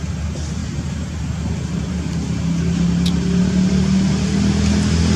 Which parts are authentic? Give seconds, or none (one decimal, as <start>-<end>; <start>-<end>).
0.0-5.2